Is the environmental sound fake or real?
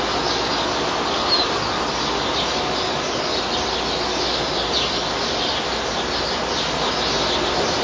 real